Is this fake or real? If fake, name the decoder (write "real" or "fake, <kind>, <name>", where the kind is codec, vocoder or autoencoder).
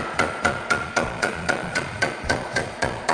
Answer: fake, vocoder, Vocos